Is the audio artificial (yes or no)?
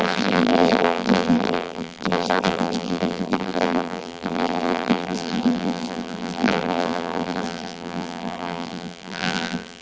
yes